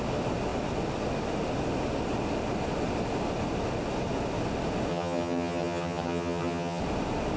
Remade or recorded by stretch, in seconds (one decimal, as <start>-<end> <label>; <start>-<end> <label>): 0.0-4.9 recorded; 4.9-6.8 remade; 6.8-7.4 recorded

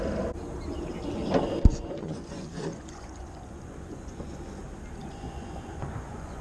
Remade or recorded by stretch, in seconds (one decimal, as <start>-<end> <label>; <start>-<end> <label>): 0.0-1.7 recorded; 1.7-4.6 remade; 4.6-5.0 recorded; 5.0-6.4 remade

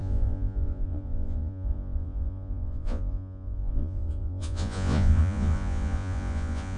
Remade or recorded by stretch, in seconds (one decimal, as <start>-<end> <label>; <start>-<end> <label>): 0.0-6.8 remade

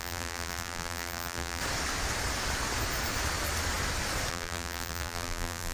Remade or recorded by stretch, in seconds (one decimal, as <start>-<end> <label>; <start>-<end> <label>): 0.0-1.6 remade; 1.6-4.3 recorded; 4.3-5.7 remade

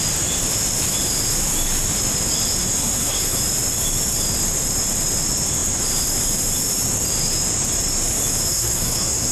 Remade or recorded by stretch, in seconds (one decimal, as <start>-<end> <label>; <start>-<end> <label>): 0.0-2.6 recorded; 2.6-3.4 remade; 3.4-8.5 recorded; 8.5-9.3 remade